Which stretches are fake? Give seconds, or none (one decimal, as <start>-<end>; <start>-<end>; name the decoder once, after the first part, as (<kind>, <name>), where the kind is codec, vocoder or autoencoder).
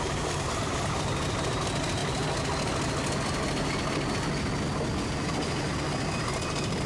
0.0-2.0 (vocoder, BigVGAN v2); 6.1-6.9